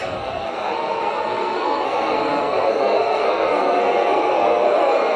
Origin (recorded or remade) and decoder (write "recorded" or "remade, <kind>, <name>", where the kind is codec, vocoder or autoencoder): remade, codec, SNAC